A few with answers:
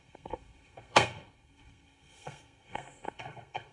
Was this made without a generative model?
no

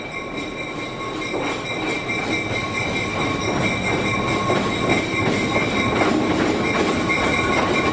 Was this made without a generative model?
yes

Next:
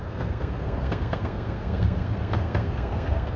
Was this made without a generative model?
no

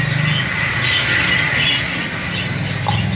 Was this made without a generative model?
yes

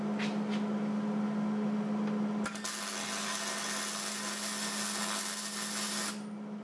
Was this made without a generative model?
yes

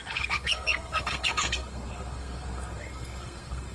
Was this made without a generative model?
no